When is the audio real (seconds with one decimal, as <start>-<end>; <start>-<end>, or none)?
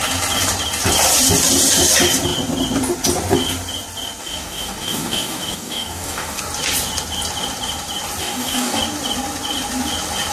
0.0-4.2; 6.4-8.2; 8.8-10.3